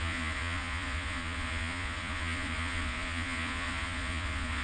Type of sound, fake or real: fake